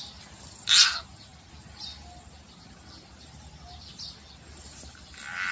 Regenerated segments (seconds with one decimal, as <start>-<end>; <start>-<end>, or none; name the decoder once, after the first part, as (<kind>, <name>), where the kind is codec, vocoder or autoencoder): none